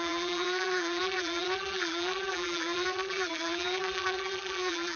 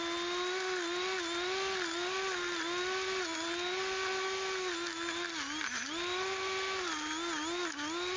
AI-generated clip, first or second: first